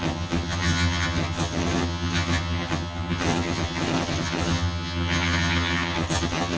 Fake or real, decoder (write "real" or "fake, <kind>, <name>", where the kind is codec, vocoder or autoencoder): fake, vocoder, HiFi-GAN